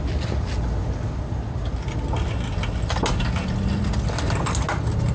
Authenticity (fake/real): real